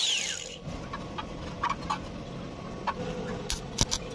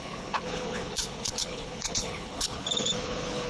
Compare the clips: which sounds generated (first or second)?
second